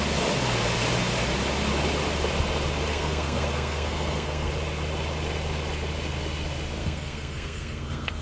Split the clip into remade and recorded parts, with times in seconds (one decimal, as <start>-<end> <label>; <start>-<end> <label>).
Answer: 0.0-2.9 recorded; 2.9-4.5 remade; 4.5-6.8 recorded; 6.8-8.2 remade